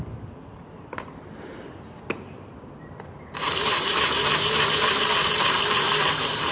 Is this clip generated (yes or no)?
yes